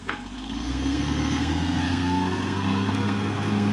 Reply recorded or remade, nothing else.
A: remade